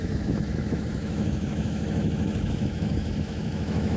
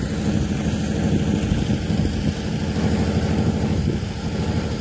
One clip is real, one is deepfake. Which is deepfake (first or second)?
first